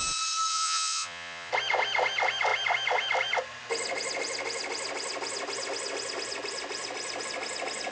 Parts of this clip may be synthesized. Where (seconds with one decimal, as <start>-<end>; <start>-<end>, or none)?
0.5-1.5